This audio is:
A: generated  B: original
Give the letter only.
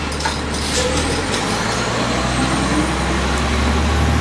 B